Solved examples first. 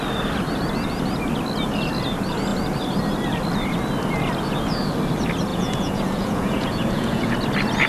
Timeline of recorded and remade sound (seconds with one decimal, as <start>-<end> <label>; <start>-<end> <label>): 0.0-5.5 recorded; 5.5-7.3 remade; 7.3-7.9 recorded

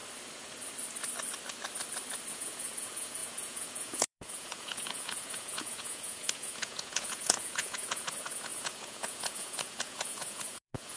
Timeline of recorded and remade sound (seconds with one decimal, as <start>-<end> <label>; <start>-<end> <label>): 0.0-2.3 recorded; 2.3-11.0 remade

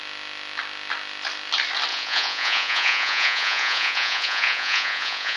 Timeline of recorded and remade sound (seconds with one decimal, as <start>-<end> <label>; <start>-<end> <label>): 0.0-1.9 recorded; 1.9-5.4 remade

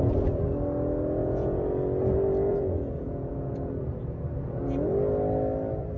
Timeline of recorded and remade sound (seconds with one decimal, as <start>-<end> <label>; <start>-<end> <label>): 0.0-1.2 recorded; 1.2-1.7 remade; 1.7-2.5 recorded; 2.5-3.7 remade; 3.7-6.0 recorded

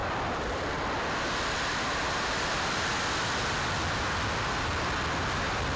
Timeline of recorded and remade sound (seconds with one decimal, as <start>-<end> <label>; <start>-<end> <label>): 0.0-5.8 recorded